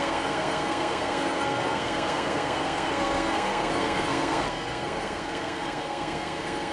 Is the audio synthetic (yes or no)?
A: yes